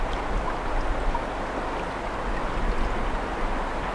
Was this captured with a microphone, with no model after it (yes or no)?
yes